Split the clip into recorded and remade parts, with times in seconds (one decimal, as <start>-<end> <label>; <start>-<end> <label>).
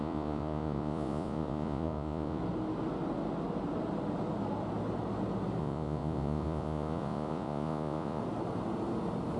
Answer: 0.0-2.4 remade; 2.4-5.6 recorded; 5.6-8.2 remade; 8.2-9.4 recorded